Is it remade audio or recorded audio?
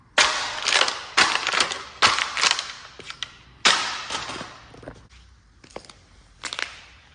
recorded